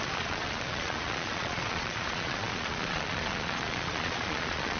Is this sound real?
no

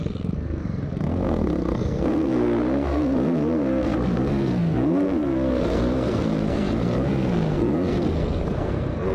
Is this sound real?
no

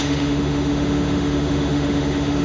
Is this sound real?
no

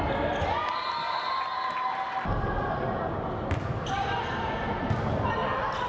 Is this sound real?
yes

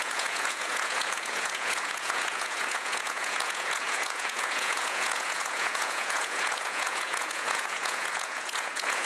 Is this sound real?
no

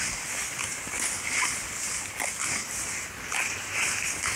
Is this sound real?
yes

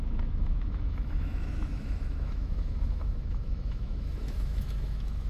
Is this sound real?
no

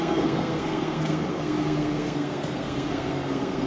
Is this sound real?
no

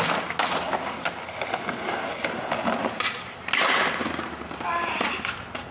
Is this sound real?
yes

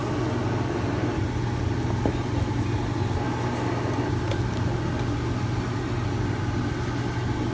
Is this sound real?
yes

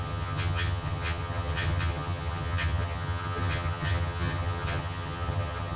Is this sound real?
no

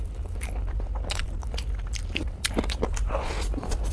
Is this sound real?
no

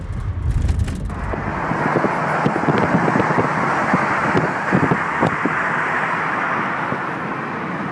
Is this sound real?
yes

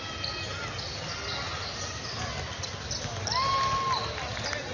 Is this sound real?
yes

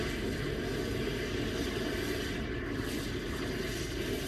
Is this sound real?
yes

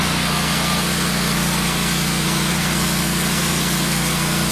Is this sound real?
no